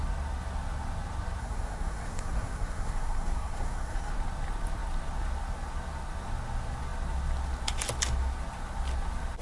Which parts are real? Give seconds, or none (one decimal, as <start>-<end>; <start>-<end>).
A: 0.0-1.4; 4.1-9.4